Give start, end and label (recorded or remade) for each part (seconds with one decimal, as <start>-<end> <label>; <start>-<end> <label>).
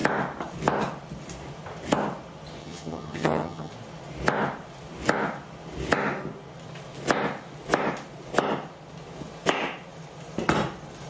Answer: 0.0-2.6 recorded; 2.6-3.7 remade; 3.7-11.1 recorded